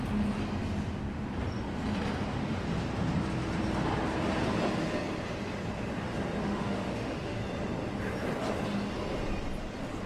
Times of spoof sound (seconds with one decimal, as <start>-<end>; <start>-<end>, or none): 6.4-7.4